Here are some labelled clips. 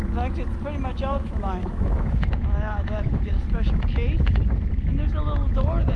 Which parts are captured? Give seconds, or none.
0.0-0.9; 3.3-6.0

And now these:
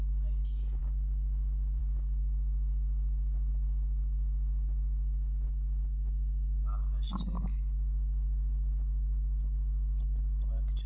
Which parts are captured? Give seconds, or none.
0.0-10.9